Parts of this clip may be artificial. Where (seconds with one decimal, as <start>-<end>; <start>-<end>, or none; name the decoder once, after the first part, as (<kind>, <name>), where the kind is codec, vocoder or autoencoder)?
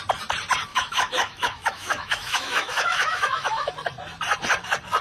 0.7-3.7 (autoencoder, DAC-VAE)